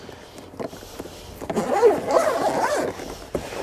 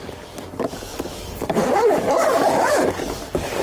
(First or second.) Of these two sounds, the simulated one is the second